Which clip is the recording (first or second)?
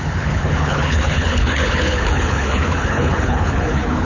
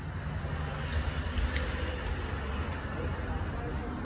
second